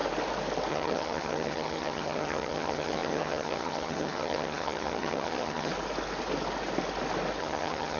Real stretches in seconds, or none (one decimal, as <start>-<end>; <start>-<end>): 0.0-0.7; 5.7-7.4